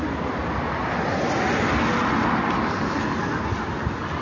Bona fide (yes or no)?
yes